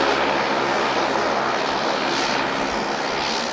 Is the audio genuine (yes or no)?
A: yes